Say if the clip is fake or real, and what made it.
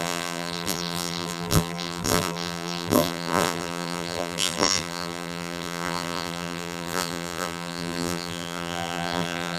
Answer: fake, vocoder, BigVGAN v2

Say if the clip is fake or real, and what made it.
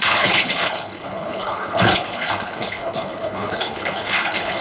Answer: fake, codec, HILCodec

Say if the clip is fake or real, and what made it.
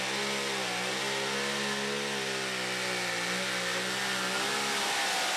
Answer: real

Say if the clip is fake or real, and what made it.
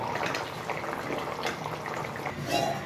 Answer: real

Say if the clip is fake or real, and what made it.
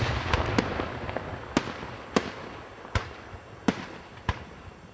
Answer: real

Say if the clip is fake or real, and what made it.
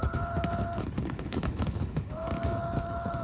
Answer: fake, codec, HILCodec